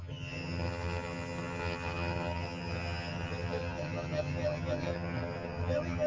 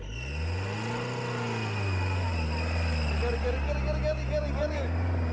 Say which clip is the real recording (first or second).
second